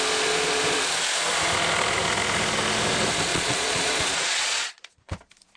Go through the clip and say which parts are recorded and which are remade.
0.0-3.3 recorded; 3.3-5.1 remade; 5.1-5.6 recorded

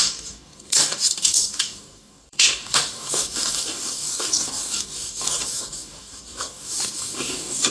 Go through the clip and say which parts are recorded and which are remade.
0.0-7.7 remade

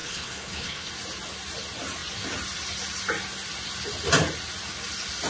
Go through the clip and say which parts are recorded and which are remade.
0.0-0.9 remade; 0.9-5.3 recorded

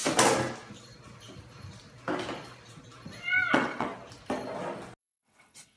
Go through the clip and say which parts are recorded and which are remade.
0.0-3.5 recorded; 3.5-3.9 remade; 3.9-5.0 recorded; 5.0-5.8 remade

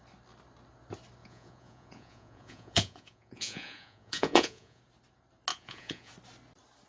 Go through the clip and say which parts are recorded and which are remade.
0.0-1.2 recorded; 1.2-4.8 remade; 4.8-5.5 recorded; 5.5-6.1 remade; 6.1-6.9 recorded

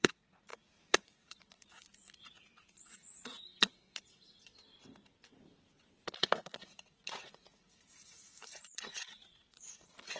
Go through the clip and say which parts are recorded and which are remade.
0.0-4.5 remade; 4.5-6.2 recorded; 6.2-10.2 remade

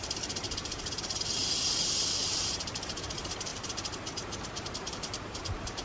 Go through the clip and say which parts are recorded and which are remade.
0.0-1.4 remade; 1.4-2.3 recorded; 2.3-5.8 remade

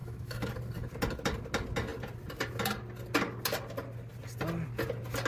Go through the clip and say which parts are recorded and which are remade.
0.0-0.5 remade; 0.5-5.3 recorded